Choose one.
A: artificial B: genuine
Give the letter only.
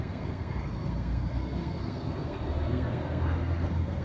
A